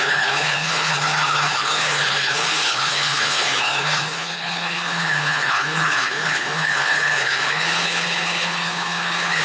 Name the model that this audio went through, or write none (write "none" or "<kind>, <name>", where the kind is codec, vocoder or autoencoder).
codec, HILCodec